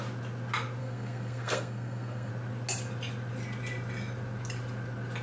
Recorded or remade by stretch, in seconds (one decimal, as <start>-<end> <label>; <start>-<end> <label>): 0.0-0.8 recorded; 0.8-2.3 remade; 2.3-5.2 recorded